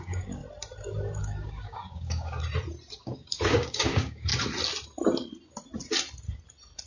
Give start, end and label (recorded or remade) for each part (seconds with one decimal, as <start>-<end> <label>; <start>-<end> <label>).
0.0-0.4 remade; 0.4-1.2 recorded; 1.2-2.4 remade; 2.4-3.0 recorded; 3.0-4.3 remade; 4.3-6.9 recorded